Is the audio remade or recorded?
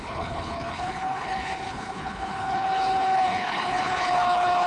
remade